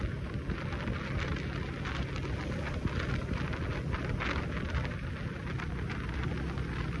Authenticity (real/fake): real